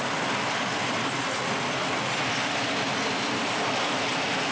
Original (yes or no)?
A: yes